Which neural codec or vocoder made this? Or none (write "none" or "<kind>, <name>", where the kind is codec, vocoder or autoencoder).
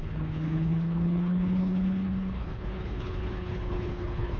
codec, HILCodec